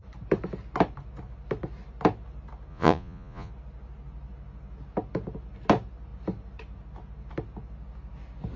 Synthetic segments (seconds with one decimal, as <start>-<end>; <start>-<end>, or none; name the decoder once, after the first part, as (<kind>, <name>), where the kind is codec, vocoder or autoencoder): 2.7-3.5 (vocoder, Vocos)